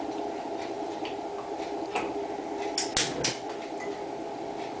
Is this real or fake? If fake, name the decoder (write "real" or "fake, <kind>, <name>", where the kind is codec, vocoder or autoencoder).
real